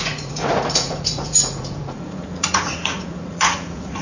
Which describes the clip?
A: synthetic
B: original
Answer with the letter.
A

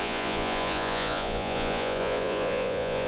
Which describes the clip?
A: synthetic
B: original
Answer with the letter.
A